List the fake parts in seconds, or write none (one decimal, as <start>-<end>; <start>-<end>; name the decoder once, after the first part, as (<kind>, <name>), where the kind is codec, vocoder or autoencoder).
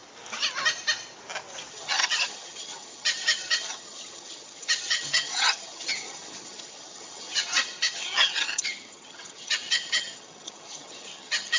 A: 1.7-11.6 (vocoder, HiFi-GAN)